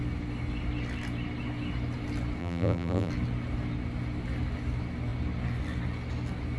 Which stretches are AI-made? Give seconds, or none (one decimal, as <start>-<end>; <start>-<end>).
2.4-3.1